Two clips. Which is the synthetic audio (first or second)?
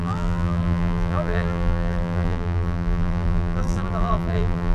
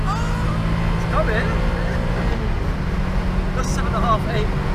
first